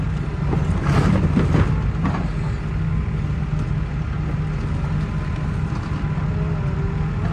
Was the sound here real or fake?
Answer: real